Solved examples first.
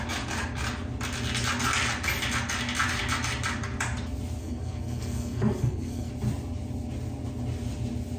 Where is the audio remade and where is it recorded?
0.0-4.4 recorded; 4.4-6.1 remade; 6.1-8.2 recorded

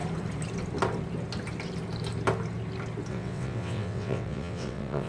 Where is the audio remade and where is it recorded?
0.0-3.1 recorded; 3.1-5.1 remade

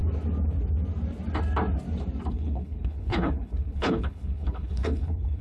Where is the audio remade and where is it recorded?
0.0-2.3 recorded; 2.3-5.4 remade

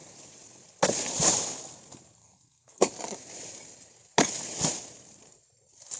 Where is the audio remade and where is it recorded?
0.0-2.2 recorded; 2.2-2.9 remade; 2.9-6.0 recorded